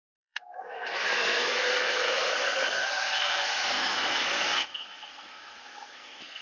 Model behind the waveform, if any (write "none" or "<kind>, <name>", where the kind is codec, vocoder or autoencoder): codec, SNAC